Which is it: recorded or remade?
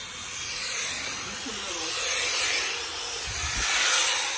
recorded